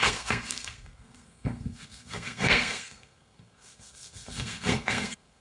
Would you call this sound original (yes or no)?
no